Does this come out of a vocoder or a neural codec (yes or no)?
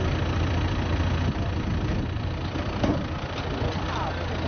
yes